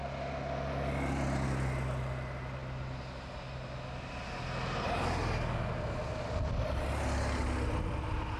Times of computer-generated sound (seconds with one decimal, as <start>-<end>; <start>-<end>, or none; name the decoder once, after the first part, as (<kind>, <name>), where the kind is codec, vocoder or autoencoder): none